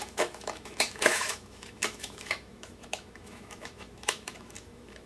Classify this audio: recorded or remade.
remade